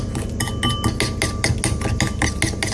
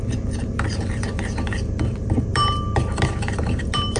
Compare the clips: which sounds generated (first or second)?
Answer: second